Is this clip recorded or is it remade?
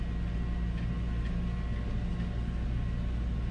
recorded